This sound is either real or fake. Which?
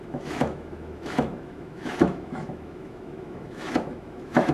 fake